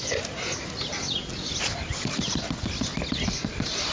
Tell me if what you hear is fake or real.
real